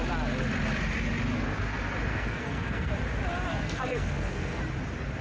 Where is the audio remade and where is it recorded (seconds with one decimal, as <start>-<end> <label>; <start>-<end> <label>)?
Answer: 0.0-2.1 recorded; 2.1-2.9 remade; 2.9-3.5 recorded; 3.5-4.6 remade; 4.6-5.2 recorded